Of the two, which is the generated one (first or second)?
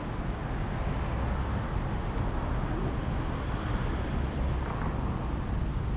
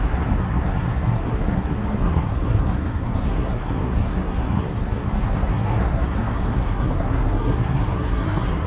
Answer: second